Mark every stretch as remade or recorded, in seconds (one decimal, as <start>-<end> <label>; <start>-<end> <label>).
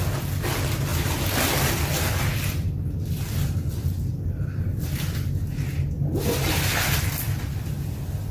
0.0-8.3 recorded